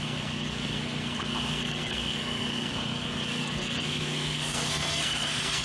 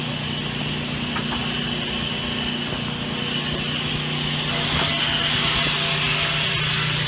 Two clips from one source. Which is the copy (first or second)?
first